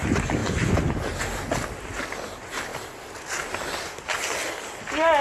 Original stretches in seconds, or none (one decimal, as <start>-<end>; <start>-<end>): 0.0-5.2